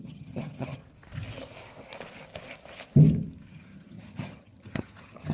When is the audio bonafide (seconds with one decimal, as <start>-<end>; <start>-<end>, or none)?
0.8-3.5